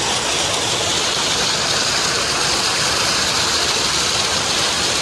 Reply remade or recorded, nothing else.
recorded